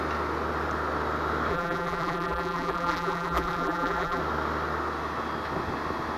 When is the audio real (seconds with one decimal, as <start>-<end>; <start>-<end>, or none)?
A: 0.0-1.5; 4.2-6.2

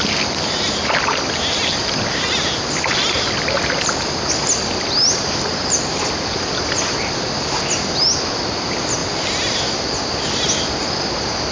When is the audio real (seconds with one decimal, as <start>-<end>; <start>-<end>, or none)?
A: 0.0-9.0; 10.1-11.5

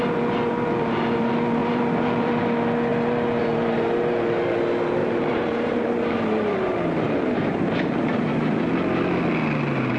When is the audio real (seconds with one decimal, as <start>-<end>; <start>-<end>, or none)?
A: 0.0-1.6; 2.4-5.0; 8.3-10.0

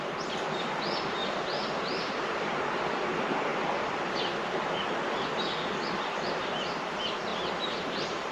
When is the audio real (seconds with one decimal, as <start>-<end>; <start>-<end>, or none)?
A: 0.0-1.2; 3.1-3.5; 6.4-7.3